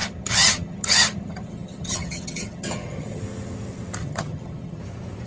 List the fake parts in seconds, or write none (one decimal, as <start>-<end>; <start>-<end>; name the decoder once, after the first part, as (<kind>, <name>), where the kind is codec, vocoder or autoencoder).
0.0-3.2 (vocoder, HiFi-GAN); 4.0-4.8